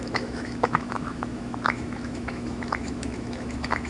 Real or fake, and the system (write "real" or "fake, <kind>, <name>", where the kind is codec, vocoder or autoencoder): fake, autoencoder, DAC-VAE